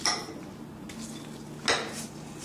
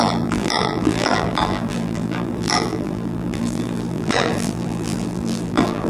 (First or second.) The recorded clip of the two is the first